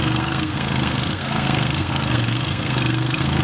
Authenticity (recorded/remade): remade